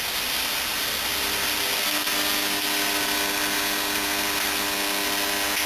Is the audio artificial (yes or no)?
no